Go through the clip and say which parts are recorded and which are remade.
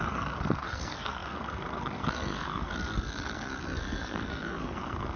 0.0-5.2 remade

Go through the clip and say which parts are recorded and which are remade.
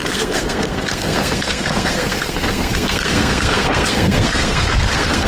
0.0-5.3 remade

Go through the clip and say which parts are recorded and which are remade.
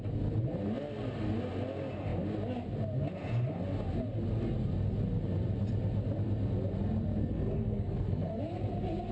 0.0-7.2 recorded; 7.2-8.4 remade; 8.4-9.1 recorded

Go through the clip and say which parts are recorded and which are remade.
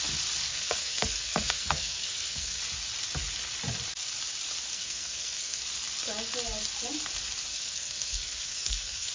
0.0-0.5 recorded; 0.5-2.6 remade; 2.6-4.7 recorded; 4.7-5.6 remade; 5.6-7.5 recorded; 7.5-9.1 remade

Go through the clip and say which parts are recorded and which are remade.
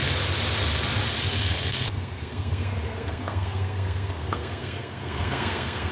0.0-1.4 recorded; 1.4-5.9 remade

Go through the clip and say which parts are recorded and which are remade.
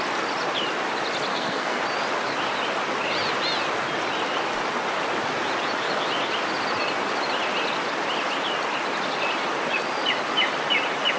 0.0-1.3 recorded; 1.3-1.8 remade; 1.8-11.2 recorded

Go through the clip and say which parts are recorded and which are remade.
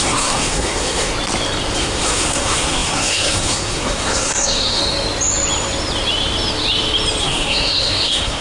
0.0-1.1 remade; 1.1-1.8 recorded; 1.8-4.8 remade; 4.8-7.2 recorded; 7.2-8.4 remade